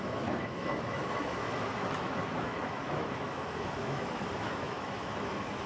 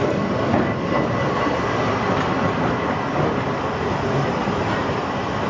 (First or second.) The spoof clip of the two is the first